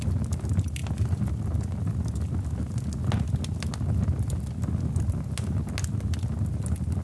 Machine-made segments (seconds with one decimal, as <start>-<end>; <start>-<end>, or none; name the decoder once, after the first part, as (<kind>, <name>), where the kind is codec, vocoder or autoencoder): none